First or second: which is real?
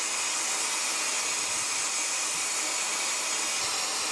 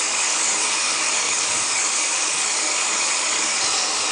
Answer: first